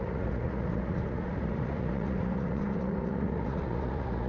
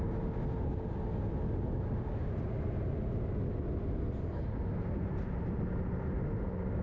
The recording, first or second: second